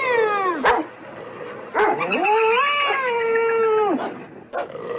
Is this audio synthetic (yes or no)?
no